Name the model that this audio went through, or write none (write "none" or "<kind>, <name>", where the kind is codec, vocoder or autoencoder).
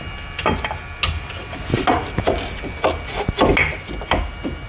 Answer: none